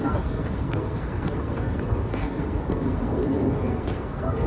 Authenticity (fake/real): fake